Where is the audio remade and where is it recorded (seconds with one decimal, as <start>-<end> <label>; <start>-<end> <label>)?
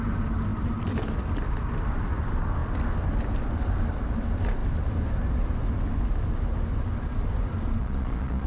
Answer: 0.0-7.8 recorded; 7.8-8.5 remade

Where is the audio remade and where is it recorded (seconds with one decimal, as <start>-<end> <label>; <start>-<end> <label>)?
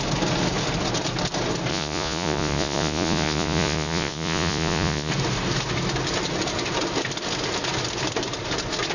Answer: 0.0-1.7 recorded; 1.7-5.1 remade; 5.1-8.9 recorded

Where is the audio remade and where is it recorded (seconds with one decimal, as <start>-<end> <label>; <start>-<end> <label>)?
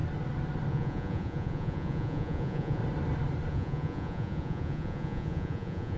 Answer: 0.0-0.7 recorded; 0.7-2.8 remade; 2.8-3.5 recorded; 3.5-6.0 remade